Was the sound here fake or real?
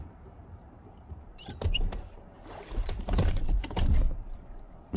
fake